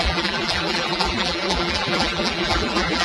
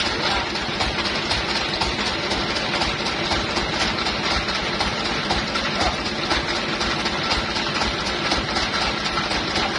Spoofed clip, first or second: first